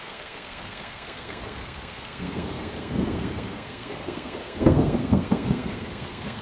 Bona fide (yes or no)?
no